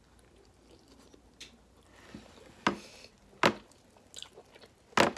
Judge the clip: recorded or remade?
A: recorded